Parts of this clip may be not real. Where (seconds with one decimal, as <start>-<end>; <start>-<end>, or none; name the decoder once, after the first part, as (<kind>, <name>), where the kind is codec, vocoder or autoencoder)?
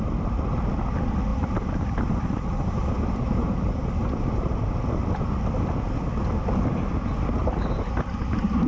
1.3-4.7 (vocoder, BigVGAN v2); 7.4-8.7